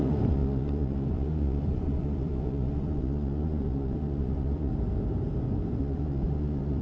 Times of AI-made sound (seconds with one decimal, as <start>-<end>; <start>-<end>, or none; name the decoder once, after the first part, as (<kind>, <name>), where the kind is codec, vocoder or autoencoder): 0.0-4.7 (vocoder, Vocos); 5.8-6.8